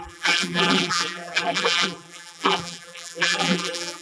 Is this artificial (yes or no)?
yes